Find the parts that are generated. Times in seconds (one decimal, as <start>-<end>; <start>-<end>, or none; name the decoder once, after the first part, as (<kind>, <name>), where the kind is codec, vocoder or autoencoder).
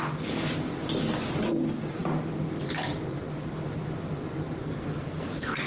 4.6-5.7 (codec, SNAC)